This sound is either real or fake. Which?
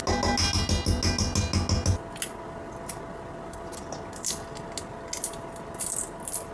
real